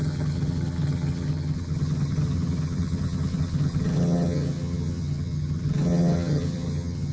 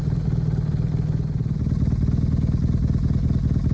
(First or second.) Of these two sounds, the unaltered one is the second